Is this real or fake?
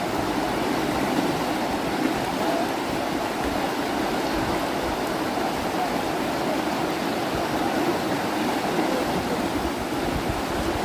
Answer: real